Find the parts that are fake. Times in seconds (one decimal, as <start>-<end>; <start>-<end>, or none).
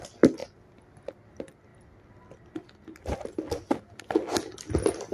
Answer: 0.4-1.0